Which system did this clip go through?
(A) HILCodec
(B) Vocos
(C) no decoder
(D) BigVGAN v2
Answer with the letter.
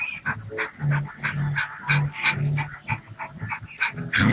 C